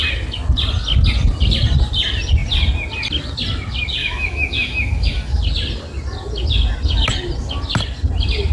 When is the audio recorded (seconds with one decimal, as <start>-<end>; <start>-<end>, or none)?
0.0-4.0; 5.4-8.5